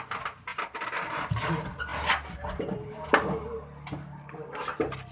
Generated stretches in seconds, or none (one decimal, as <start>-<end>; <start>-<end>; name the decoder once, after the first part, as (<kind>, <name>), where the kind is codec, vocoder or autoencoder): 0.0-0.5 (vocoder, BigVGAN v2); 1.1-1.9; 4.5-5.1